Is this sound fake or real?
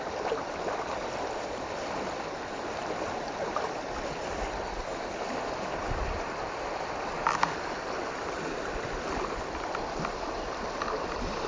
real